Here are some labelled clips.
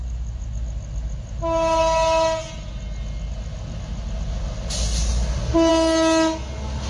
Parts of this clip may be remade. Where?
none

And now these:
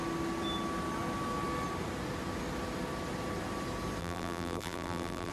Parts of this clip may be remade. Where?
4.0-5.3 (vocoder, BigVGAN v2)